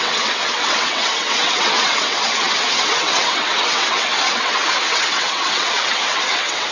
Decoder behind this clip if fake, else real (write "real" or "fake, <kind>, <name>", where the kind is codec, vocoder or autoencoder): fake, vocoder, WaveNeXt